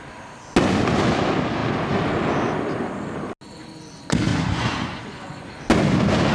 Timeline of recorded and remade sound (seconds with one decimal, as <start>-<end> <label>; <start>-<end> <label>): 0.0-4.3 recorded; 4.3-5.5 remade; 5.5-6.3 recorded